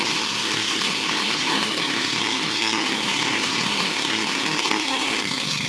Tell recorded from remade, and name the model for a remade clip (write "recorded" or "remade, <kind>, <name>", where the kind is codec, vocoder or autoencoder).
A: remade, codec, SNAC